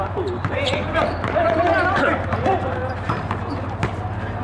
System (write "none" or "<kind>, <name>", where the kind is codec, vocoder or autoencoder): vocoder, BigVGAN v2